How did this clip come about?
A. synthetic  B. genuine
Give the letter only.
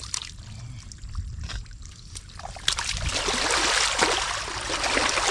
B